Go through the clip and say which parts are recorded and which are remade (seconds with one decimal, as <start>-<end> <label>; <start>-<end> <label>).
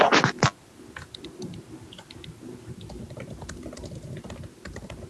0.0-5.1 recorded